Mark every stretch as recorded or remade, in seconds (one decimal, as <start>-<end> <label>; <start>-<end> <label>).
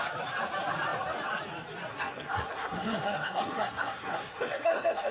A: 0.0-1.9 recorded; 1.9-5.1 remade